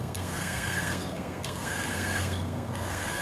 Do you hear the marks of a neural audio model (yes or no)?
yes